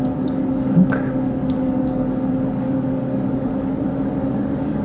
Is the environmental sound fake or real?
fake